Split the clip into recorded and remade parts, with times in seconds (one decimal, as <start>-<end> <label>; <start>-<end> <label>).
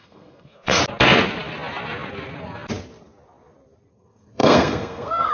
0.0-0.8 remade; 0.8-3.9 recorded; 3.9-5.3 remade